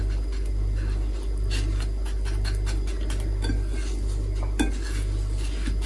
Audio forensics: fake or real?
real